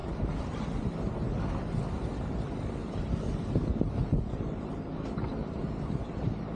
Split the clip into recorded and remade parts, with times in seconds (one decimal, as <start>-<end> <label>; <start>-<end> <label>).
0.0-1.4 remade; 1.4-2.8 recorded; 2.8-6.6 remade